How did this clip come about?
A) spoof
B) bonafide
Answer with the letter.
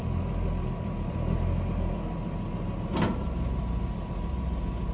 B